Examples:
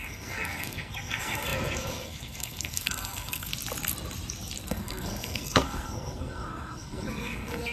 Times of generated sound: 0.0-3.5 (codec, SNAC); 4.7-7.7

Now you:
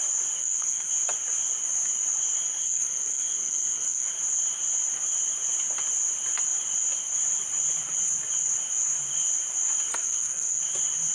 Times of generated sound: 0.4-0.9 (codec, SNAC); 2.6-4.1; 10.0-10.6

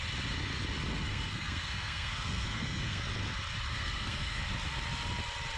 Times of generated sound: 1.1-3.0 (codec, SNAC); 3.7-4.4

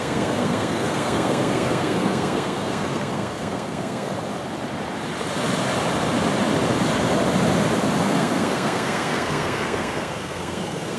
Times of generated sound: 0.0-4.1 (codec, SNAC); 8.0-11.0

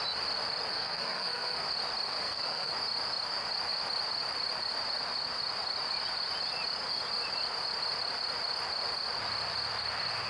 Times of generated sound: 0.7-1.6 (codec, SNAC); 2.1-2.7